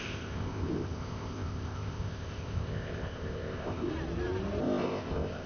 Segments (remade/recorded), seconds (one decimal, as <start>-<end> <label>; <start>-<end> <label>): 0.0-3.9 remade; 3.9-4.6 recorded; 4.6-5.5 remade